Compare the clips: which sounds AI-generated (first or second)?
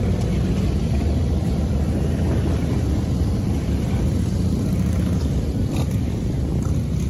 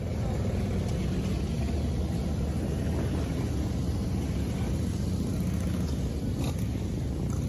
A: first